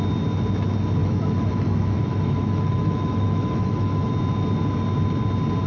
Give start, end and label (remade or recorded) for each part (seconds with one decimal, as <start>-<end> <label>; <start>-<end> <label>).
0.0-1.0 recorded; 1.0-4.1 remade; 4.1-5.7 recorded